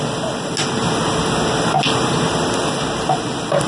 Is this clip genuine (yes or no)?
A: yes